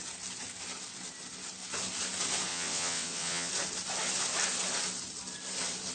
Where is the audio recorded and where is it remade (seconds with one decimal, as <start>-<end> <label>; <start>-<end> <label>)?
0.0-2.5 recorded; 2.5-3.5 remade; 3.5-5.9 recorded